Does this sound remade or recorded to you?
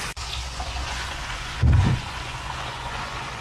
remade